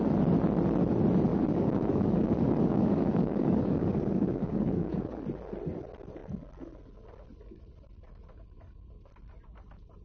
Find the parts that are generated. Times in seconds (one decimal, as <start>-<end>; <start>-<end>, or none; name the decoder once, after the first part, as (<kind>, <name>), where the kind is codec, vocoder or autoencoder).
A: 1.3-5.2 (codec, DAC)